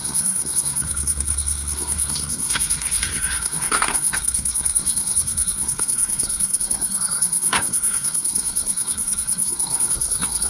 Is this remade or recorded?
remade